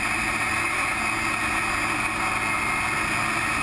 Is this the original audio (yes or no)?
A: yes